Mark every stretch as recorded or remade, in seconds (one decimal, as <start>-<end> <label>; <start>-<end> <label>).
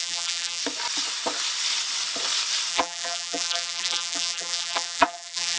0.0-0.6 remade; 0.6-2.7 recorded; 2.7-5.6 remade